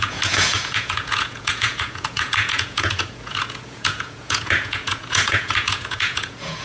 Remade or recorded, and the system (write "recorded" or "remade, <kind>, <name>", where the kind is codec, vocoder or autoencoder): remade, vocoder, Vocos